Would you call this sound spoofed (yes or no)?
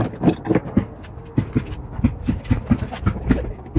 no